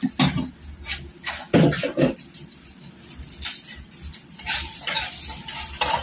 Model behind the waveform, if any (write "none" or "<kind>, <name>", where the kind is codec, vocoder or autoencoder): none